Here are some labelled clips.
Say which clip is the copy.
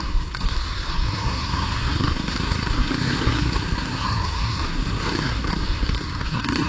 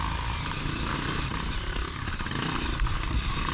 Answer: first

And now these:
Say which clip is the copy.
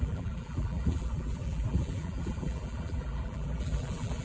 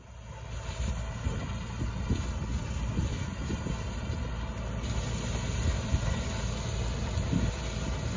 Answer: first